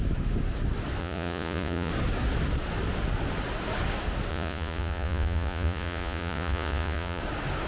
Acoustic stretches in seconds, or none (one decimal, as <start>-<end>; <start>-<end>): 0.0-1.0; 1.9-4.3; 7.2-7.7